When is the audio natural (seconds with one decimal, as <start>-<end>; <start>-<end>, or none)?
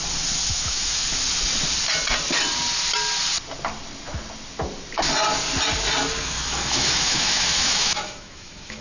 0.0-0.5; 1.0-6.2